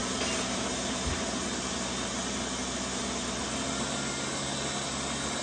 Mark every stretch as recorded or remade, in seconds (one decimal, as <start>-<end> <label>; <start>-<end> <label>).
0.0-5.4 recorded